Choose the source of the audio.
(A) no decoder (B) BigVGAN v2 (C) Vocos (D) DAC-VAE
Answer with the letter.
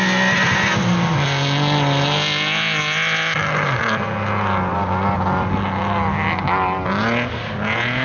A